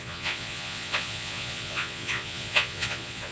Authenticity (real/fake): fake